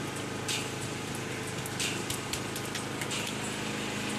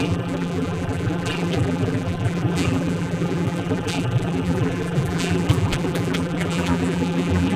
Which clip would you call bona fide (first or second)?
first